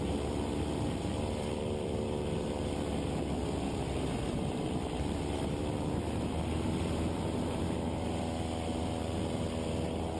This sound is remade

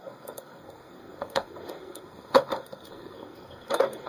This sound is remade